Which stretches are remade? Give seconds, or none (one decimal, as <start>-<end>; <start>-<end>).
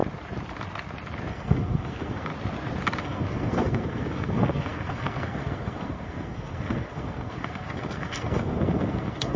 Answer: 1.3-2.3; 3.0-9.4